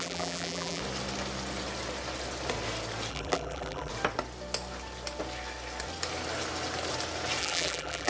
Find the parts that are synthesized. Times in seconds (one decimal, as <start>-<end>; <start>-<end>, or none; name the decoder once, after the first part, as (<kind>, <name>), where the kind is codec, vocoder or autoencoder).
0.0-0.8 (vocoder, BigVGAN v2); 3.1-3.9; 7.4-8.1